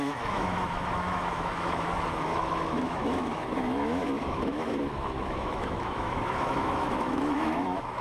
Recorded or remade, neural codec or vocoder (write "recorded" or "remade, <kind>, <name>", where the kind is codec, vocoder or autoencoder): remade, autoencoder, DAC-VAE